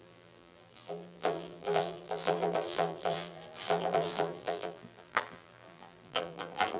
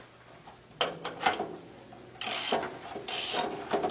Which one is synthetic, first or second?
first